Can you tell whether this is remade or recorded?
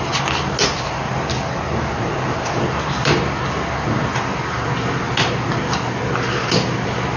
recorded